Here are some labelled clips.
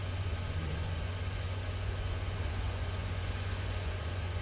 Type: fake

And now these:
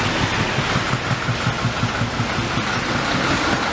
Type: real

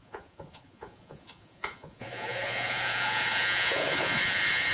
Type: fake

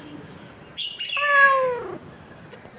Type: real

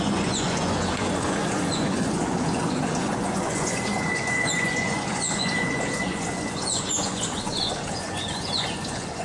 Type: fake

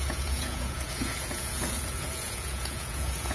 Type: fake